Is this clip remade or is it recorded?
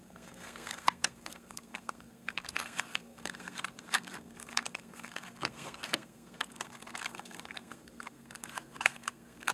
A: remade